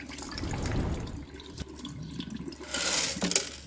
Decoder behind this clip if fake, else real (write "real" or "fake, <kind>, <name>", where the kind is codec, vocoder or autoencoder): real